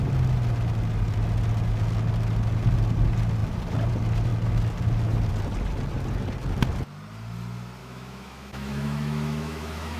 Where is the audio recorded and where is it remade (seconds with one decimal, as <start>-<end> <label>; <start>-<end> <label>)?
0.0-7.8 recorded; 7.8-10.0 remade